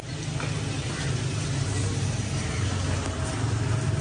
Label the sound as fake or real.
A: real